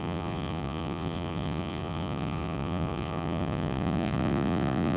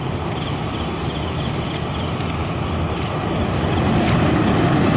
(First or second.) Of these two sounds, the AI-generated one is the first